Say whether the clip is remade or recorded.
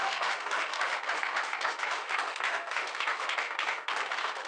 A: remade